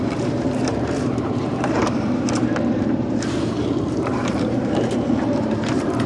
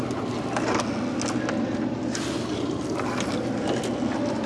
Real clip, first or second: second